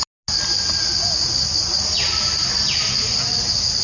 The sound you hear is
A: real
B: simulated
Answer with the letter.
A